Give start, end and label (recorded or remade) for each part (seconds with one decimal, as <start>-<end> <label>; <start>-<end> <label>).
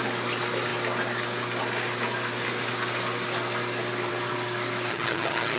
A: 0.0-4.9 recorded; 4.9-5.6 remade